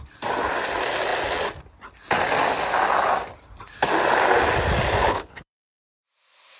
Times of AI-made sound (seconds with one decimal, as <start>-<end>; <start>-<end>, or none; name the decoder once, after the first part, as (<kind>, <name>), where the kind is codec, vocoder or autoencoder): 5.1-5.8 (codec, HILCodec)